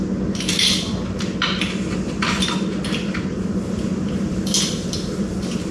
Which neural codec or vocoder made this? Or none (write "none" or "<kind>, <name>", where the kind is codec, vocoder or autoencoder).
none